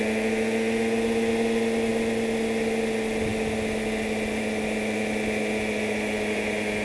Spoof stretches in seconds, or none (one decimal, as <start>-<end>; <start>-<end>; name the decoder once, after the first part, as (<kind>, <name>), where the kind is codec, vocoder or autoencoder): none